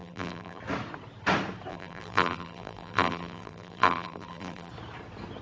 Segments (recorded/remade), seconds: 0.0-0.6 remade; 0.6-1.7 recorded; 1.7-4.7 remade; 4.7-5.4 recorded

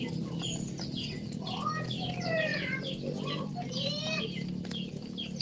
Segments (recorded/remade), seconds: 0.0-5.4 recorded

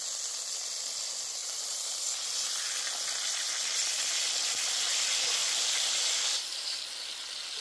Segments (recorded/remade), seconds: 0.0-1.4 recorded; 1.4-2.0 remade; 2.0-5.4 recorded; 5.4-6.8 remade; 6.8-7.6 recorded

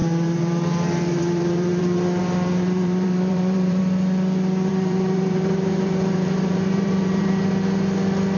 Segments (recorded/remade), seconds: 0.0-3.8 remade; 3.8-4.7 recorded; 4.7-7.4 remade; 7.4-8.4 recorded

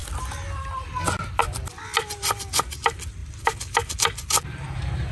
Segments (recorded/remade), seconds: 0.0-1.4 recorded; 1.4-5.1 remade

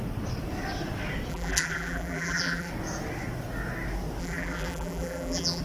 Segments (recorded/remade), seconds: 0.0-1.3 recorded; 1.3-2.7 remade; 2.7-4.2 recorded; 4.2-5.6 remade